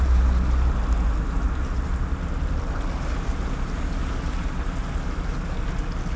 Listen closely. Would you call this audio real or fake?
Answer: real